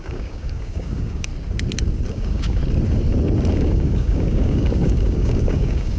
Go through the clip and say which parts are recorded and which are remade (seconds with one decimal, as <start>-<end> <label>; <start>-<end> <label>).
0.0-1.3 remade; 1.3-2.1 recorded; 2.1-2.6 remade; 2.6-3.5 recorded; 3.5-6.0 remade